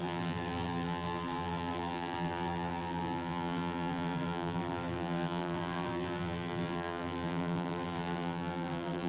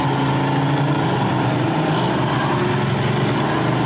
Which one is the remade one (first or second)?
first